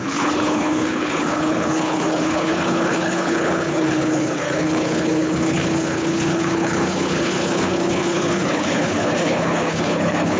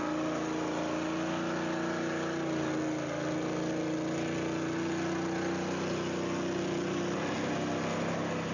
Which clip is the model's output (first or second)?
first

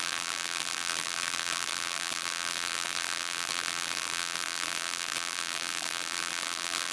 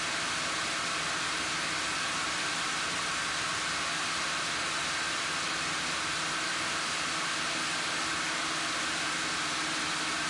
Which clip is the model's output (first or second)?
first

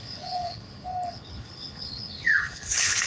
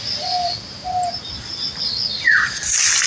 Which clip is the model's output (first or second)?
first